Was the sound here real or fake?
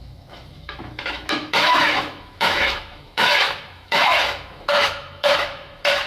fake